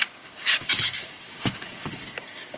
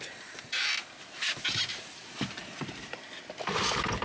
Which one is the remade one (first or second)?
first